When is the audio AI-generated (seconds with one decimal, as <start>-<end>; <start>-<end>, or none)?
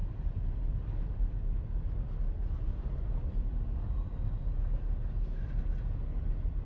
none